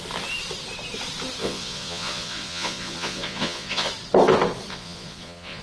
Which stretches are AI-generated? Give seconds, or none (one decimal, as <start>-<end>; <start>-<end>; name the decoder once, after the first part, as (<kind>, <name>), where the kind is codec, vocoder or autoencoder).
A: 1.4-3.9 (vocoder, Vocos); 4.7-5.6